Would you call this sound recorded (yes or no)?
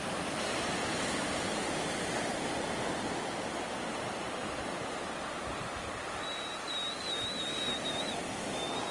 yes